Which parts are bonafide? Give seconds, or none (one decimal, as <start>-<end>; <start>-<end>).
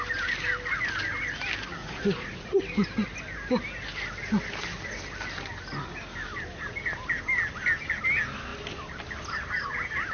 0.0-1.8; 2.6-10.1